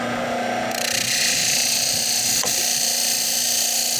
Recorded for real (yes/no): yes